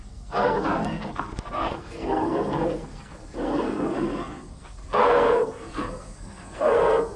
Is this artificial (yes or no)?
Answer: yes